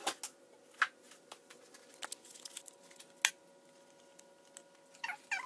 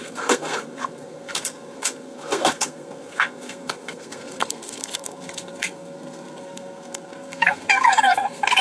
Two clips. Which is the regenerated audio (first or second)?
second